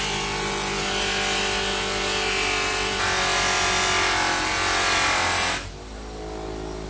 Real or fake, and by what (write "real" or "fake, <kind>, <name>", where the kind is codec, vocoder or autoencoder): real